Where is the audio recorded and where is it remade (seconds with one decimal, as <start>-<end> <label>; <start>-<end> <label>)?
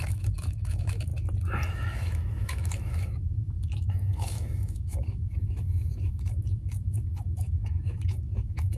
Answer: 0.0-1.1 remade; 1.1-1.7 recorded; 1.7-8.8 remade